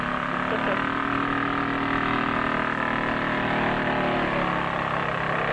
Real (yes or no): yes